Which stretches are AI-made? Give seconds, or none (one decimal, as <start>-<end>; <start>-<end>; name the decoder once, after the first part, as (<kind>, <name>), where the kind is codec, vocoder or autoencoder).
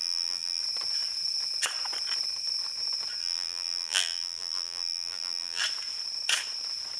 0.0-0.6 (vocoder, BigVGAN v2); 3.2-5.6